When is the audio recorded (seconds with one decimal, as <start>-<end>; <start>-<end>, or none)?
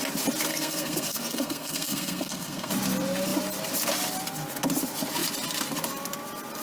0.0-0.5; 2.7-6.6